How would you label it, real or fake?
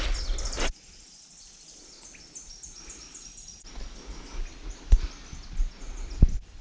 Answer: real